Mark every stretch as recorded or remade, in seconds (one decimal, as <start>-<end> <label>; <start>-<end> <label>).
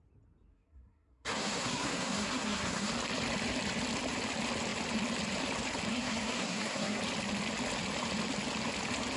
0.0-0.5 recorded; 0.5-2.9 remade; 2.9-5.9 recorded; 5.9-7.0 remade; 7.0-9.2 recorded